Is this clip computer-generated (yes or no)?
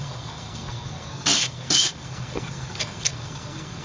yes